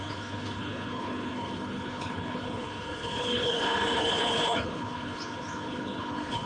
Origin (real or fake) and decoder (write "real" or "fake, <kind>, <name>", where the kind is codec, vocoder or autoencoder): fake, codec, HILCodec